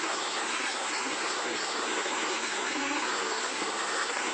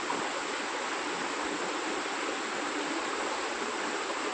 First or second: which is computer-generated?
first